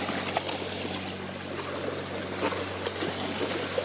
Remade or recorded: recorded